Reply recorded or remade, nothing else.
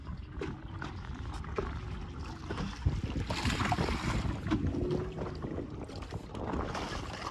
recorded